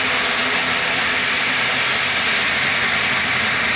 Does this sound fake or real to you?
real